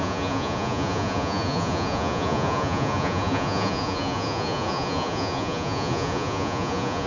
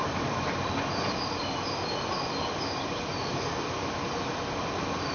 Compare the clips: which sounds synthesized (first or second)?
first